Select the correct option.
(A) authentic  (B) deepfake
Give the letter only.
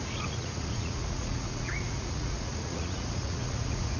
B